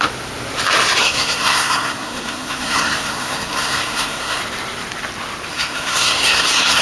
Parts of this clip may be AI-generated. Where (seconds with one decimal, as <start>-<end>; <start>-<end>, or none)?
1.0-4.4; 5.5-6.8